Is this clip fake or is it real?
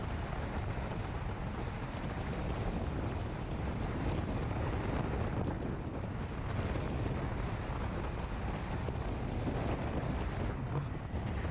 real